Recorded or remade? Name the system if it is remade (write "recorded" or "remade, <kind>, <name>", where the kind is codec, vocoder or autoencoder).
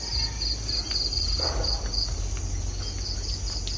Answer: recorded